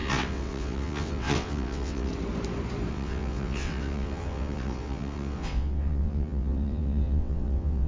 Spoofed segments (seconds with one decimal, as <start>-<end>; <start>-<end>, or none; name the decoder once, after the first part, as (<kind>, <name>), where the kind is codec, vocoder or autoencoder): 0.0-2.1 (vocoder, WaveNeXt); 2.9-7.9